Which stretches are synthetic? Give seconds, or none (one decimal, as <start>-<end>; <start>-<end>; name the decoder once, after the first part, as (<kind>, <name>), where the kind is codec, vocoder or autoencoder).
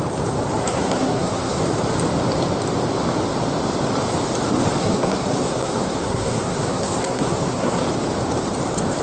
0.6-1.6 (codec, SNAC); 4.8-7.8